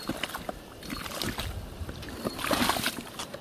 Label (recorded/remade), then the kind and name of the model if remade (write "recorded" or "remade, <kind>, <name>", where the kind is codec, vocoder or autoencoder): recorded